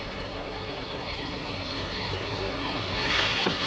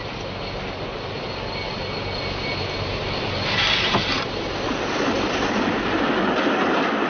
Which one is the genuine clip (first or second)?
second